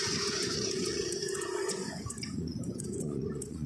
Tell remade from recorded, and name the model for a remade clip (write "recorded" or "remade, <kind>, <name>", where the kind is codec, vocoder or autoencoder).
remade, vocoder, Vocos